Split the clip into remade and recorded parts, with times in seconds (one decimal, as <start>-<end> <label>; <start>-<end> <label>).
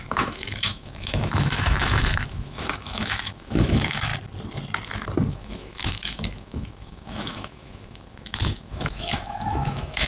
0.0-4.1 remade; 4.1-5.3 recorded; 5.3-10.1 remade